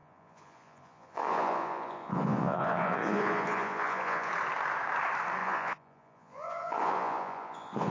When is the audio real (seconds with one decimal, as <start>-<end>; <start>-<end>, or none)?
4.3-5.4